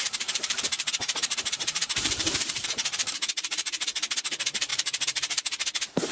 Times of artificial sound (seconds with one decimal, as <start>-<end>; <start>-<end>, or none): 0.0-6.1